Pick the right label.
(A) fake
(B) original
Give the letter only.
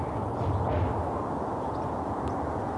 B